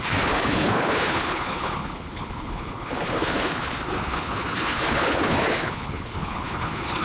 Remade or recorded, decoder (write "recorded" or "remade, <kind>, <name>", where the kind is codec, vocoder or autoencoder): remade, codec, HILCodec